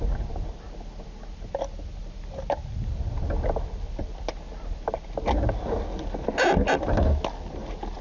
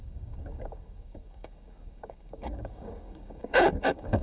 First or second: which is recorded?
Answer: first